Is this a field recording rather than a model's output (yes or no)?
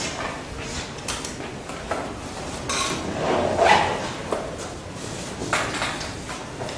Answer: no